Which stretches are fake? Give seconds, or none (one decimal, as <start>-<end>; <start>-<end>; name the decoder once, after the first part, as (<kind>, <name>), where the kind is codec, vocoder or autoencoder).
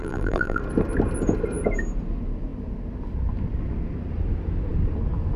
0.0-0.6 (vocoder, BigVGAN v2)